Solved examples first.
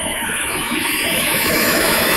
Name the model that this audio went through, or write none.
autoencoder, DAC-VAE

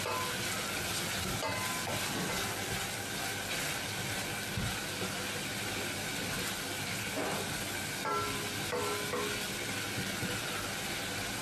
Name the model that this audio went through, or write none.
none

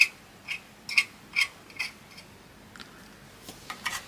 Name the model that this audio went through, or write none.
none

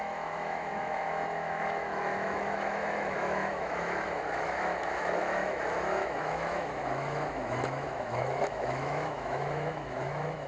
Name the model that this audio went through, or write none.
autoencoder, DAC-VAE